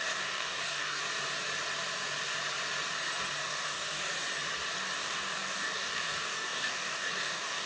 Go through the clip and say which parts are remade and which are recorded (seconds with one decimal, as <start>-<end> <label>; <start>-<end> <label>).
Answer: 0.0-1.0 remade; 1.0-3.4 recorded; 3.4-4.1 remade; 4.1-5.0 recorded; 5.0-7.7 remade